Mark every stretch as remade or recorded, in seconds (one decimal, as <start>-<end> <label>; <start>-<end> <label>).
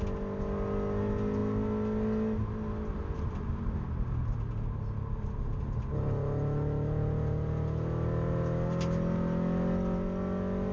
0.0-10.7 recorded